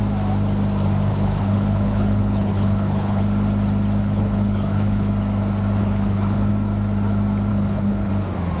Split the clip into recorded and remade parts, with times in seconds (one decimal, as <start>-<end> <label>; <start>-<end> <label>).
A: 0.0-1.1 recorded; 1.1-3.2 remade; 3.2-4.0 recorded; 4.0-5.1 remade; 5.1-5.8 recorded; 5.8-6.5 remade; 6.5-7.5 recorded; 7.5-8.1 remade; 8.1-8.6 recorded